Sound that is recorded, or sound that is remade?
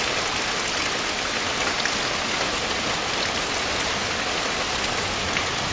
recorded